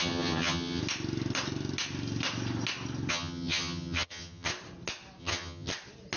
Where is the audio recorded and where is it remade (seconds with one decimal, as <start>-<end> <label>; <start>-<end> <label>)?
0.0-0.8 remade; 0.8-3.1 recorded; 3.1-4.5 remade; 4.5-5.2 recorded; 5.2-5.7 remade; 5.7-6.2 recorded